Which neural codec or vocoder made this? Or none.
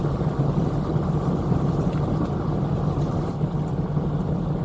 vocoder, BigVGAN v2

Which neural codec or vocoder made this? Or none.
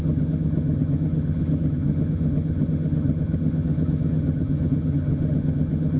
vocoder, HiFi-GAN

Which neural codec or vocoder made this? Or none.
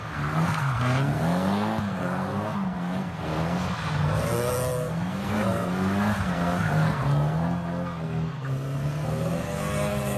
codec, SNAC